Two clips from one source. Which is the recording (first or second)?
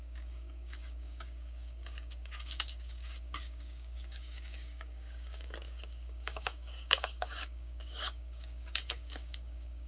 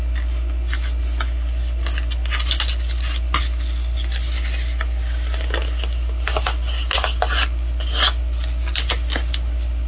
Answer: second